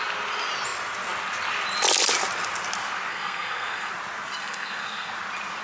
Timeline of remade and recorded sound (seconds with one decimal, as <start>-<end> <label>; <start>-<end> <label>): 0.0-3.1 recorded; 3.1-3.9 remade; 3.9-4.4 recorded; 4.4-5.1 remade; 5.1-5.6 recorded